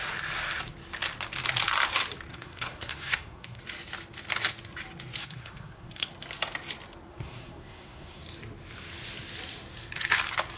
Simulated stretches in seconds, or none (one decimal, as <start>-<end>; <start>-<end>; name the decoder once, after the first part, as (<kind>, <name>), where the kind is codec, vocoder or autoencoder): 2.3-3.6 (codec, SNAC); 5.2-6.1; 7.1-8.2